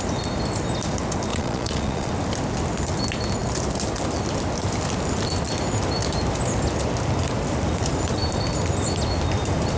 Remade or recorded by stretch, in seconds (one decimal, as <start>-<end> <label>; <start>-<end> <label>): 0.0-1.3 recorded; 1.3-2.1 remade; 2.1-9.8 recorded

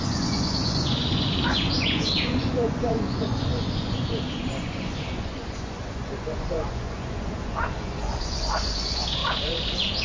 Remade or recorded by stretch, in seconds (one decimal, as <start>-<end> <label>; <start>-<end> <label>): 0.0-10.0 remade

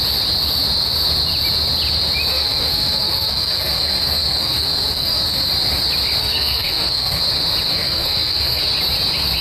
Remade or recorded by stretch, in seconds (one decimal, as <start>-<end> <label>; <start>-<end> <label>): 0.0-2.3 recorded; 2.3-5.5 remade; 5.5-6.2 recorded; 6.2-7.2 remade; 7.2-7.7 recorded; 7.7-8.6 remade; 8.6-9.4 recorded